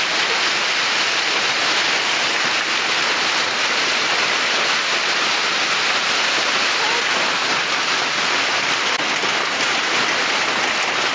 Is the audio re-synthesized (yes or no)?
no